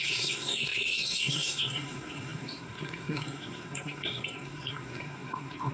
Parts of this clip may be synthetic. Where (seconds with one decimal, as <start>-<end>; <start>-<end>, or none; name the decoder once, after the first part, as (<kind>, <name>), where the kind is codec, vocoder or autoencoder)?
0.0-5.7 (codec, SNAC)